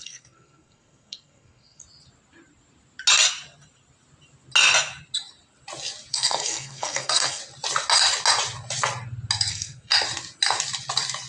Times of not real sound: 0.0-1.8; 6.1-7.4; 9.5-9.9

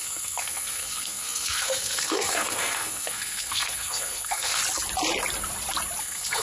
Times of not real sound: 0.0-4.6; 6.0-6.4

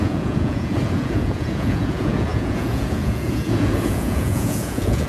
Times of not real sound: 0.0-5.1

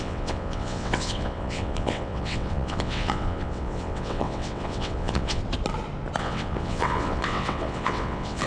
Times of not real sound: 0.0-5.4; 6.2-8.5

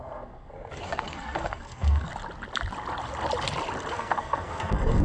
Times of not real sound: 0.0-2.1; 3.9-5.0

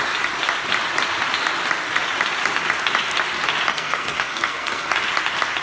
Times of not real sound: 3.7-4.9

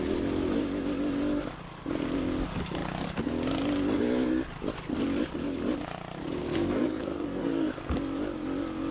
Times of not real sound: 6.4-7.7

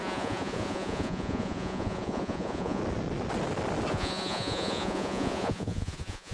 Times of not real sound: 0.0-2.8; 3.9-6.3